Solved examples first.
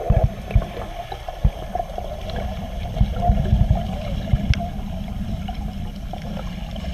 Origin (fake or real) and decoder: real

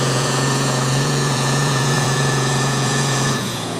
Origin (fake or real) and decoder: fake, vocoder, Vocos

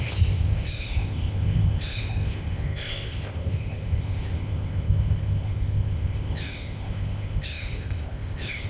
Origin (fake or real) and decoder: fake, codec, ZipCodec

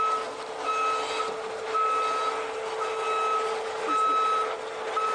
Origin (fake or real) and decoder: real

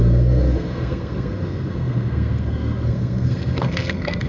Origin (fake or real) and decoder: fake, codec, SNAC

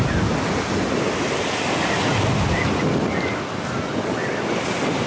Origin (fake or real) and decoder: real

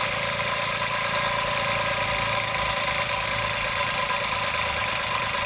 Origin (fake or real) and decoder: real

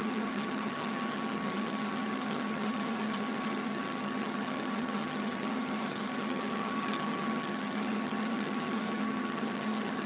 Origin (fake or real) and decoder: fake, vocoder, HiFi-GAN